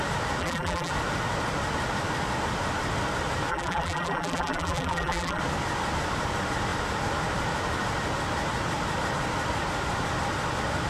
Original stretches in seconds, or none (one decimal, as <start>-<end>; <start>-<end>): 0.0-0.4; 0.9-3.5; 5.4-10.9